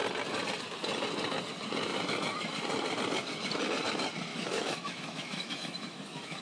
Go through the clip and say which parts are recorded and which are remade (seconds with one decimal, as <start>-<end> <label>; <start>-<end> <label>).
0.0-4.3 recorded; 4.3-6.4 remade